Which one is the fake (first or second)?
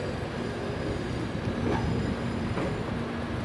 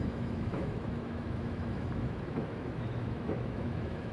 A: second